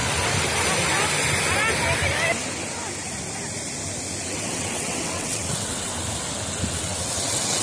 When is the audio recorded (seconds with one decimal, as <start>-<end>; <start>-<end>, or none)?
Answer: 0.0-4.3; 5.9-6.7